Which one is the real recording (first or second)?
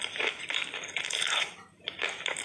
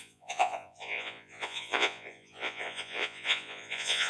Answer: first